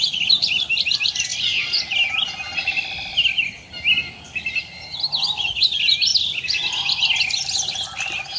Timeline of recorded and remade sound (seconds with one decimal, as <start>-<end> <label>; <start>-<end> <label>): 0.0-8.4 recorded